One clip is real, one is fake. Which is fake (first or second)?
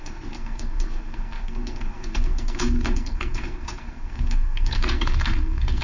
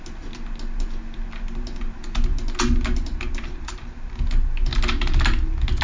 first